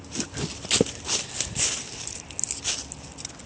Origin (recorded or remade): recorded